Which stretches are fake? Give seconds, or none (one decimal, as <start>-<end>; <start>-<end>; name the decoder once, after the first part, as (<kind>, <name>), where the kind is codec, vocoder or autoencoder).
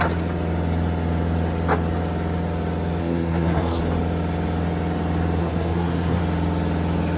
3.0-3.8 (codec, SNAC); 5.4-6.2